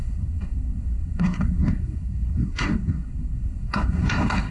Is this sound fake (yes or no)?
yes